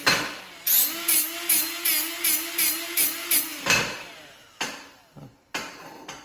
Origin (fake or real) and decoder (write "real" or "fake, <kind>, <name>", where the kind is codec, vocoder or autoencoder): real